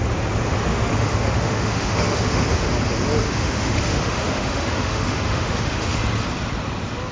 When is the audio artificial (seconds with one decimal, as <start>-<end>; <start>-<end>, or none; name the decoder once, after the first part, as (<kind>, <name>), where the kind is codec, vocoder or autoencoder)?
0.7-2.7 (autoencoder, DAC-VAE); 3.2-6.0

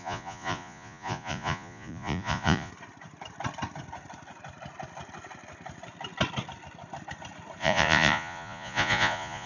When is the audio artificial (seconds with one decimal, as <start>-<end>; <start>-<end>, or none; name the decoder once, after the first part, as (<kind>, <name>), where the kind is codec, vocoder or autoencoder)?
0.0-2.7 (vocoder, Vocos); 7.6-9.5

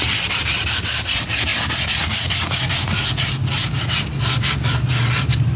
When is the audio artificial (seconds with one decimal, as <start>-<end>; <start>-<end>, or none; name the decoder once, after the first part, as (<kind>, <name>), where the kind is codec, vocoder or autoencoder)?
none

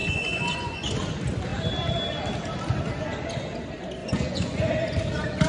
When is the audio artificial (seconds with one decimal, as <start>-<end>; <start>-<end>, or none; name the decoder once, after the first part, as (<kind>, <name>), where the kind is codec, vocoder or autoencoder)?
0.0-1.1 (vocoder, Vocos); 4.0-4.7

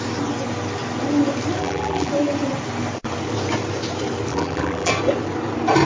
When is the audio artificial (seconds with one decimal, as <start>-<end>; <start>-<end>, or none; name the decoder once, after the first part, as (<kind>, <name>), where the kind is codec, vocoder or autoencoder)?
1.6-2.1 (vocoder, BigVGAN v2); 4.3-4.9

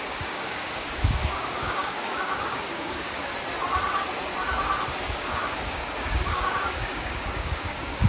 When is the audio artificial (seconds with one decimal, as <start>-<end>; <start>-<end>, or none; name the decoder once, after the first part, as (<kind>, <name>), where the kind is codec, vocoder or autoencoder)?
0.0-3.3 (codec, DAC); 5.1-8.1